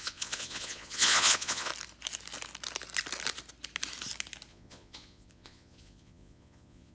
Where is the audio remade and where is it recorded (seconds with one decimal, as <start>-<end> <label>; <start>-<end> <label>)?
0.0-1.7 remade; 1.7-4.5 recorded; 4.5-6.9 remade